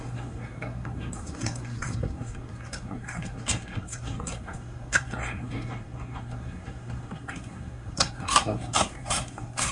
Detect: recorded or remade remade